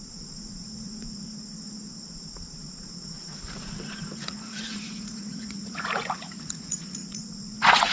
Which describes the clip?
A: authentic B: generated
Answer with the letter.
B